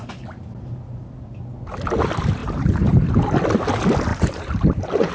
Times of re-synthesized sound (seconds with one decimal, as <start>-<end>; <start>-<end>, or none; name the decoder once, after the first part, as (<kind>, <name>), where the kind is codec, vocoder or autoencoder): 2.4-3.0 (vocoder, BigVGAN v2); 4.1-5.1